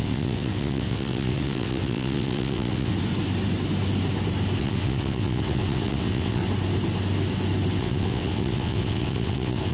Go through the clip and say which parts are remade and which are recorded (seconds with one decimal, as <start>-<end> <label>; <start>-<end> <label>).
0.0-2.9 remade; 2.9-4.6 recorded; 4.6-6.4 remade; 6.4-7.8 recorded; 7.8-9.7 remade